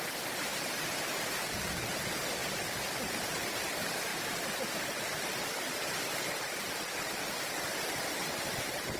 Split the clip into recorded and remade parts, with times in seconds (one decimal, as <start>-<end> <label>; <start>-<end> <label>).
0.0-4.1 remade; 4.1-5.2 recorded; 5.2-9.0 remade